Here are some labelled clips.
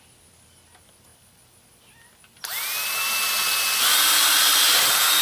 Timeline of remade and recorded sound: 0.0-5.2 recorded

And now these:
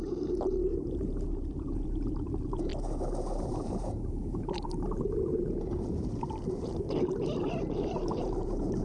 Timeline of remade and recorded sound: 0.0-2.7 remade; 2.7-3.4 recorded; 3.4-8.8 remade